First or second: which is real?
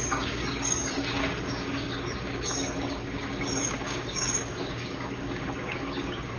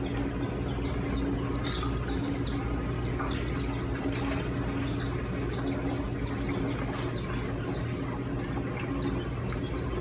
second